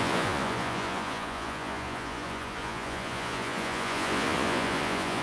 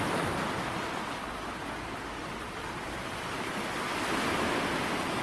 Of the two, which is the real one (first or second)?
second